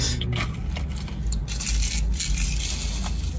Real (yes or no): yes